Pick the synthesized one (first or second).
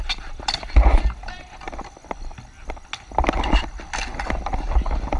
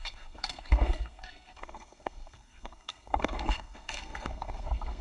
second